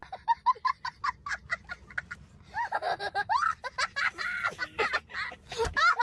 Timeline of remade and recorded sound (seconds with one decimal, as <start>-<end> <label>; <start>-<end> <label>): 0.0-6.0 recorded